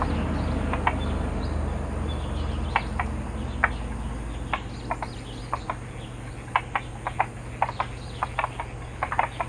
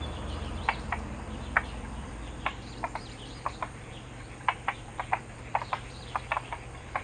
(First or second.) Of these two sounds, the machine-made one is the second